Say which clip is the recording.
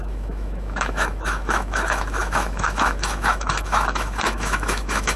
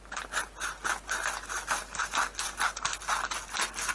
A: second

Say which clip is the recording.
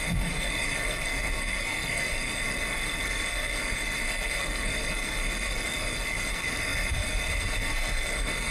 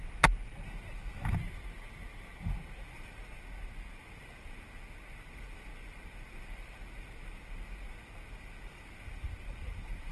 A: second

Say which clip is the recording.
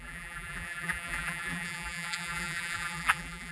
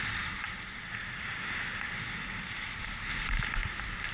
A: second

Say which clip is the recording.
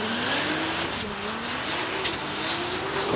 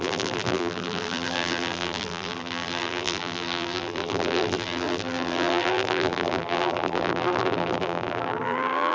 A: first